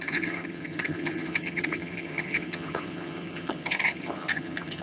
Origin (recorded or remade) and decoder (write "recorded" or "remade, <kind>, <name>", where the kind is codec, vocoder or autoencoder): remade, vocoder, HiFi-GAN